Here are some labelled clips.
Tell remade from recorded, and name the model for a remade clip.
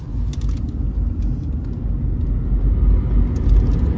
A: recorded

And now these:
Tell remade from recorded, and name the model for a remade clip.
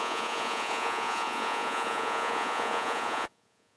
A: remade, vocoder, Vocos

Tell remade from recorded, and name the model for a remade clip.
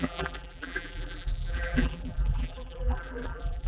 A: remade, vocoder, BigVGAN v2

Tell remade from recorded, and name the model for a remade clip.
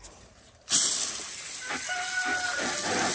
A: recorded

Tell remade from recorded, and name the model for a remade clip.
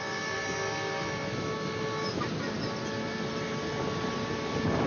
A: recorded